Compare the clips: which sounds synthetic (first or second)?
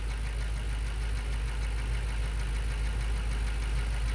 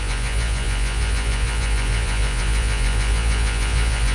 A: second